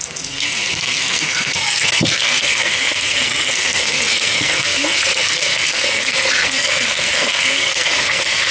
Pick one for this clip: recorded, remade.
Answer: remade